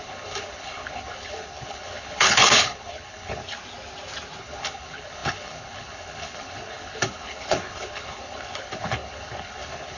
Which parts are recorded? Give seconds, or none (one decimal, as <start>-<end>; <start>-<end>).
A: 3.4-4.4